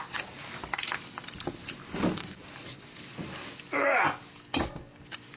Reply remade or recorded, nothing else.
recorded